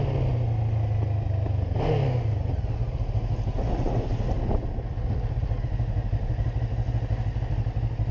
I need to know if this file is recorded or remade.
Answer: recorded